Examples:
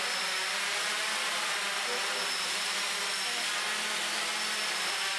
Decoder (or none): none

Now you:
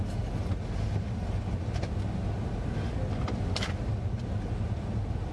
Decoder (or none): none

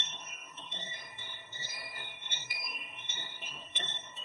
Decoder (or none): codec, SNAC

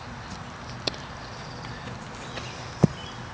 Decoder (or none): none